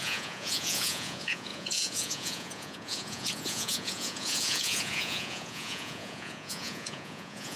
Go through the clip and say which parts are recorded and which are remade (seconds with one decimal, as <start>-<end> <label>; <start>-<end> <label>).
0.0-7.6 remade